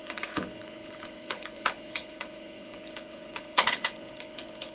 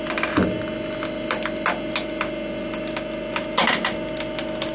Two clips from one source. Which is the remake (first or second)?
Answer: first